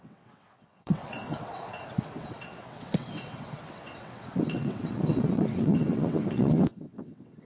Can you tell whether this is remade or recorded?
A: remade